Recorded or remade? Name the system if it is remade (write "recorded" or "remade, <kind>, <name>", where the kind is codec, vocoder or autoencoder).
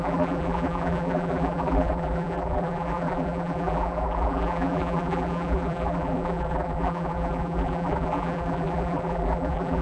remade, vocoder, BigVGAN v2